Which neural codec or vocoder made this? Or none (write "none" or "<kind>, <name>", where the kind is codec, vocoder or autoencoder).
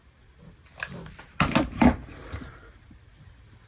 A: none